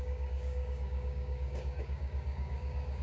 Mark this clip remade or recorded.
remade